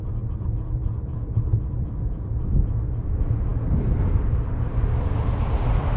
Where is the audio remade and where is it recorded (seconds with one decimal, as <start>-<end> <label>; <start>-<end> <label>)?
0.0-6.0 recorded